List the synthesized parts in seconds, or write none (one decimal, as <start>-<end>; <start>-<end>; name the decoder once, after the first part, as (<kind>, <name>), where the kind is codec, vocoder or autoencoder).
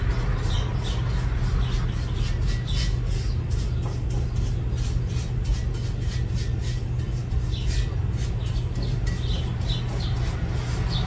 none